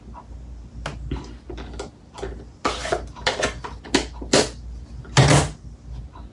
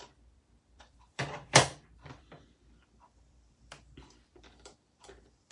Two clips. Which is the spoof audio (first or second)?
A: second